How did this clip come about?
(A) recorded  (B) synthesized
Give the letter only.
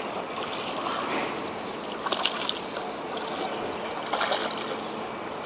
A